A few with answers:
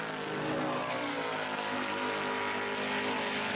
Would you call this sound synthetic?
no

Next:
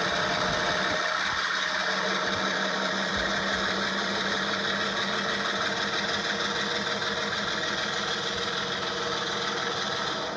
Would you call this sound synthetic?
no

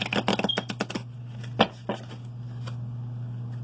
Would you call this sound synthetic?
no